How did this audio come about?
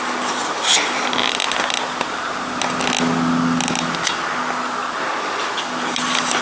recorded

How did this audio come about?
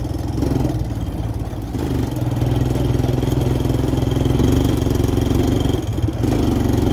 recorded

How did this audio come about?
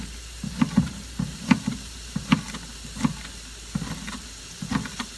recorded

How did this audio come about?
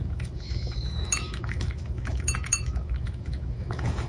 remade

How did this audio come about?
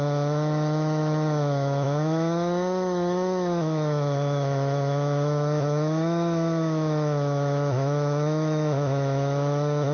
remade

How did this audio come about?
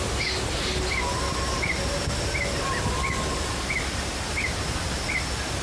recorded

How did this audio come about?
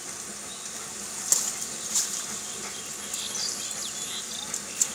recorded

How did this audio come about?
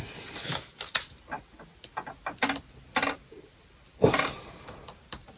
recorded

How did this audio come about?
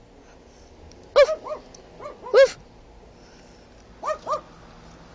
recorded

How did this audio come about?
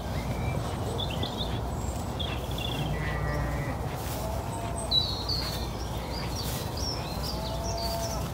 recorded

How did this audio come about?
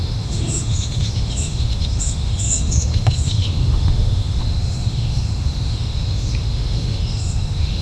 remade